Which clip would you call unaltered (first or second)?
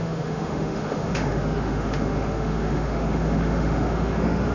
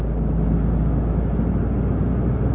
second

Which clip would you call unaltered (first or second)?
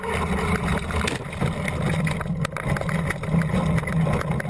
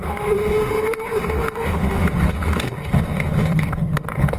first